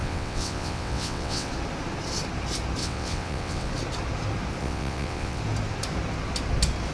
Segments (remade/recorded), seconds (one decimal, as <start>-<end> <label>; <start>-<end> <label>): 0.0-1.5 remade; 1.5-2.8 recorded; 2.8-3.7 remade; 3.7-4.6 recorded; 4.6-5.4 remade; 5.4-6.9 recorded